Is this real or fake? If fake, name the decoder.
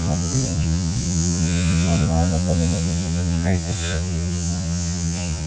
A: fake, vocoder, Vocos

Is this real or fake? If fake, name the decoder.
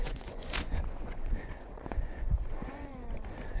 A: fake, vocoder, Vocos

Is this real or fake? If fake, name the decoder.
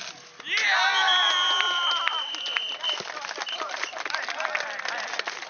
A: real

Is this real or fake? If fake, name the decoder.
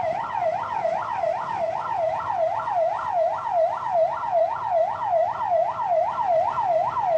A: real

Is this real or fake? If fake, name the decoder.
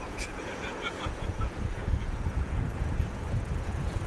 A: fake, vocoder, Vocos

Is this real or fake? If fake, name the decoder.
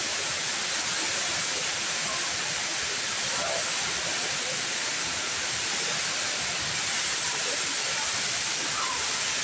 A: real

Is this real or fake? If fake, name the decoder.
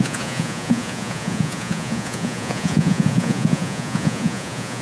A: fake, vocoder, Vocos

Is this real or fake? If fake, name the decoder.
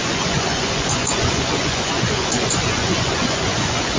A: fake, vocoder, Vocos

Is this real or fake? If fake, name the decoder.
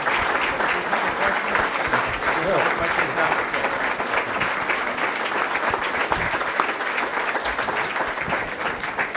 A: real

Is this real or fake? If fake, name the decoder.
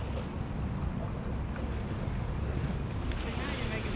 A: real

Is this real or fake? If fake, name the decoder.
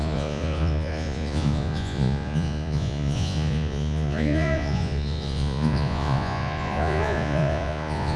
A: fake, vocoder, Vocos